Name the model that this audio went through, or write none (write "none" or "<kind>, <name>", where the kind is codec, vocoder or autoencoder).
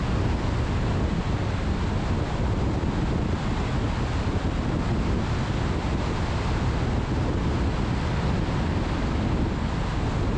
none